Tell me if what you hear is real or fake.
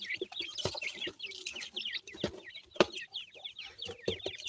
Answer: real